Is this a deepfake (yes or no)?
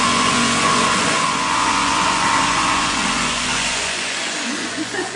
yes